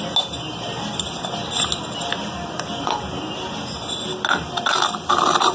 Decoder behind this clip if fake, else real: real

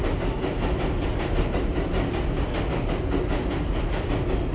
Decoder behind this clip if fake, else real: real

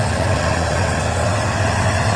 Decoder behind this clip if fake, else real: fake, vocoder, WaveNeXt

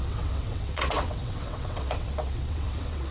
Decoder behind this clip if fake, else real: fake, vocoder, WaveNeXt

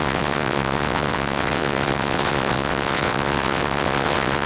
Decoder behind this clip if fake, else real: fake, vocoder, WaveNeXt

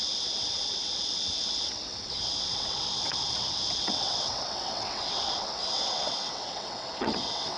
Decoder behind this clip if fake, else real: fake, vocoder, WaveNeXt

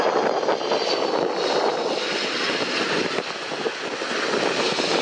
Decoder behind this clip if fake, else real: real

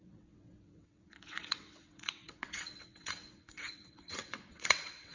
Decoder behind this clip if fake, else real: fake, vocoder, WaveNeXt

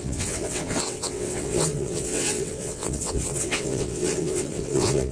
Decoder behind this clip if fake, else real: fake, vocoder, WaveNeXt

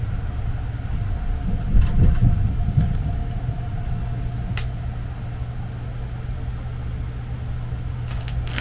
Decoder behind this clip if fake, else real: real